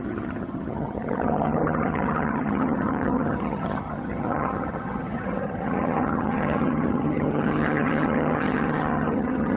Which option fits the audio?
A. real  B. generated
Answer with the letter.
B